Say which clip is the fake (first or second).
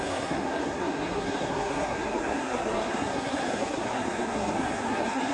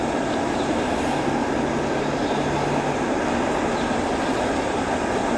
first